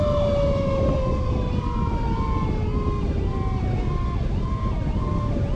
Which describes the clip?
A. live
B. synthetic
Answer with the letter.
A